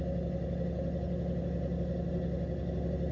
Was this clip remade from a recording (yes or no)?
no